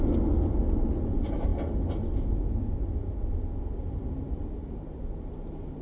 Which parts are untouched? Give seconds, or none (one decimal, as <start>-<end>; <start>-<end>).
0.0-5.8